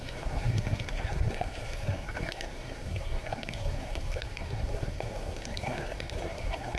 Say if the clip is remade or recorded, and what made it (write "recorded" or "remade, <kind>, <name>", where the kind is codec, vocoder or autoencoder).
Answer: remade, codec, SNAC